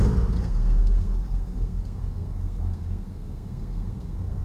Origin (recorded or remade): remade